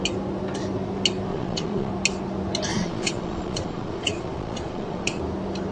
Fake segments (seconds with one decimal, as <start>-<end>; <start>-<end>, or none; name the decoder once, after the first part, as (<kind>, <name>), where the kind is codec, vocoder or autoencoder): 1.3-1.9 (vocoder, Vocos); 2.7-5.2